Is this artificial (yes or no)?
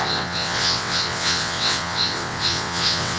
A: yes